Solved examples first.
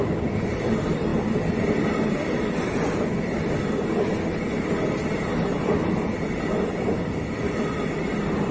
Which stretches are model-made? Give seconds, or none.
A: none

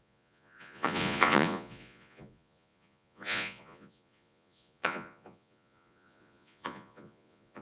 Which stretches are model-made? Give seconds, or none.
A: 0.0-7.6 (vocoder, Vocos)